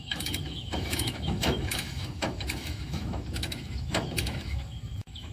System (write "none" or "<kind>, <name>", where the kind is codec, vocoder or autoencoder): autoencoder, DAC-VAE